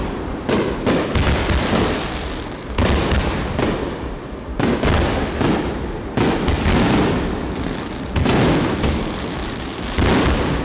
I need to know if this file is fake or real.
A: real